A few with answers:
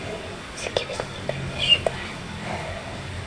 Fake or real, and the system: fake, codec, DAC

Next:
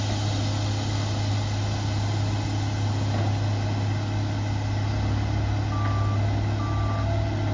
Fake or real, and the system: real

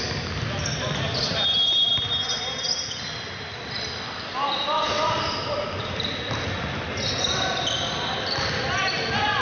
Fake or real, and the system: real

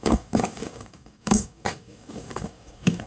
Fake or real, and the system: fake, codec, DAC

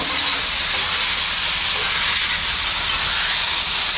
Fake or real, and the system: real